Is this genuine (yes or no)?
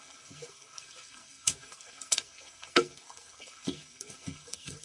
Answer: no